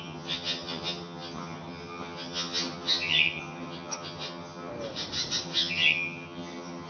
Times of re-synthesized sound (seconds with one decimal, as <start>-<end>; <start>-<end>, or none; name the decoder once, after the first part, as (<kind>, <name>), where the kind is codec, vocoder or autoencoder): 0.0-4.7 (vocoder, HiFi-GAN); 5.4-6.9